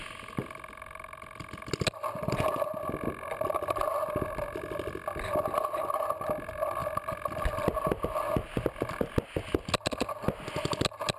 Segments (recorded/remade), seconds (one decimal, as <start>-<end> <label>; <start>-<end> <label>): 0.0-11.2 recorded